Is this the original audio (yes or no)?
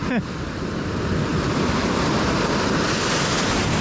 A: yes